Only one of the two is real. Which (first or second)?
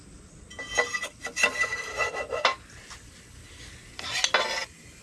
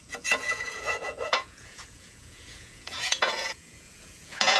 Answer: first